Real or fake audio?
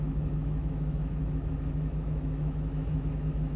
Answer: fake